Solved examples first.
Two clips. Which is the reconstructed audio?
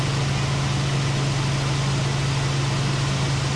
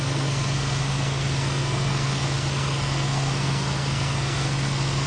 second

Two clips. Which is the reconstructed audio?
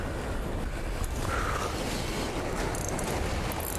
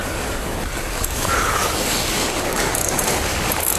second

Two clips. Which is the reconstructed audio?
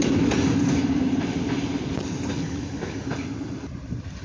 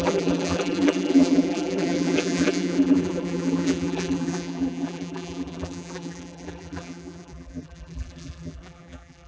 second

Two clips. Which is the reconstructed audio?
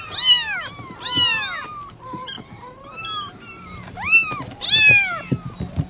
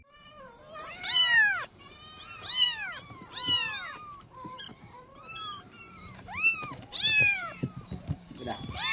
second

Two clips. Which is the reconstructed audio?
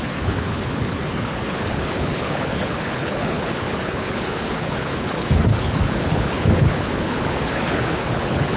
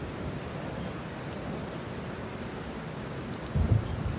first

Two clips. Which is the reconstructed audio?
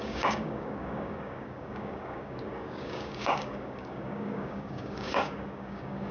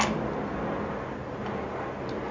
first